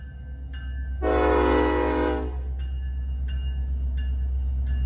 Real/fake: real